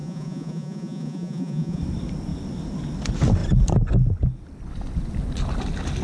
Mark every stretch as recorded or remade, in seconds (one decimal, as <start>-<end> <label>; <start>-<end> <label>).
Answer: 0.0-1.8 remade; 1.8-6.0 recorded